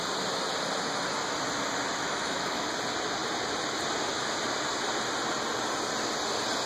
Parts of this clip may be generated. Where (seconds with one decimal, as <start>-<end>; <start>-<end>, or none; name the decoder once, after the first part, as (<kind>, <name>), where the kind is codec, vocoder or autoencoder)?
1.9-2.7 (autoencoder, DAC-VAE)